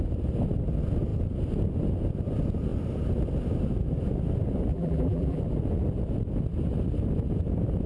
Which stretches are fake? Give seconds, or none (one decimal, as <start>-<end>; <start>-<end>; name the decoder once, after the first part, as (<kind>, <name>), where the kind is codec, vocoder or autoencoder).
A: 4.7-5.4 (vocoder, BigVGAN v2)